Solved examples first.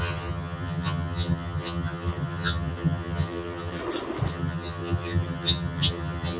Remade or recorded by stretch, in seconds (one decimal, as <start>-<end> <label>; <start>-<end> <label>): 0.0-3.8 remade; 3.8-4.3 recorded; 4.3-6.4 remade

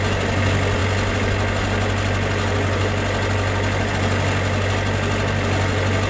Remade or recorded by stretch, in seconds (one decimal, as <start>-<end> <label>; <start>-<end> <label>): 0.0-6.1 recorded

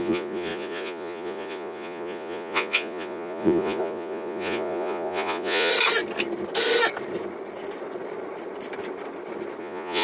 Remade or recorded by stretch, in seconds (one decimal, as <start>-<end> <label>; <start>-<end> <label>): 0.0-5.7 remade; 5.7-9.6 recorded; 9.6-10.0 remade